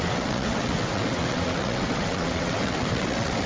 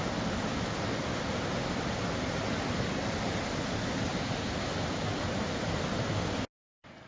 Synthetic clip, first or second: first